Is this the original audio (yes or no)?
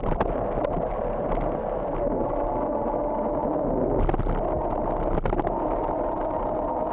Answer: yes